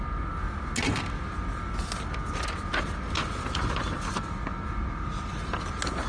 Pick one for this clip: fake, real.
real